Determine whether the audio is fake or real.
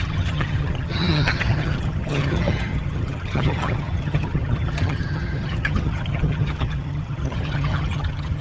fake